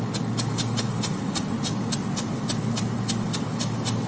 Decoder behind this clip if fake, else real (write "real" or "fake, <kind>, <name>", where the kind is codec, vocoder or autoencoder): real